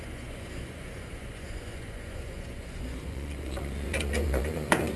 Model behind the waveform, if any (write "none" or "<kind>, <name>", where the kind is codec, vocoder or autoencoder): vocoder, Vocos